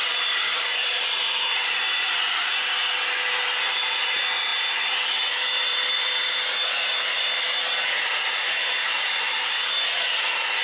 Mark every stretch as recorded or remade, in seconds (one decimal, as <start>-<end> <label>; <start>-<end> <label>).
0.0-2.5 remade; 2.5-5.7 recorded; 5.7-6.3 remade; 6.3-10.6 recorded